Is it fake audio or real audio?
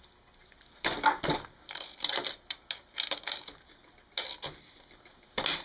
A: real